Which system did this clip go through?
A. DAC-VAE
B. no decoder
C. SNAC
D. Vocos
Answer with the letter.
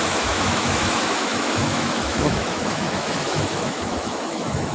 A